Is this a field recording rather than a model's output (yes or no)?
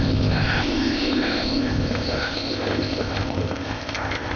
no